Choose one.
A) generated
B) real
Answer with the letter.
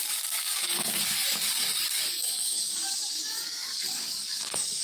A